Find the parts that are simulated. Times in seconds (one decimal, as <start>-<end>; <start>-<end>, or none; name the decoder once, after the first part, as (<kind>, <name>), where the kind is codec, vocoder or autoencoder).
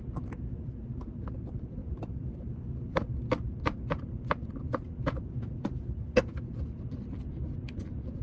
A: none